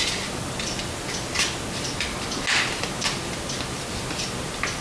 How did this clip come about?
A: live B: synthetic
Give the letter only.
A